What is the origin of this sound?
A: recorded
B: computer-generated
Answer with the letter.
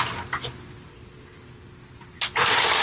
A